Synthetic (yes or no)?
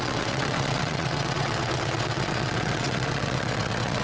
yes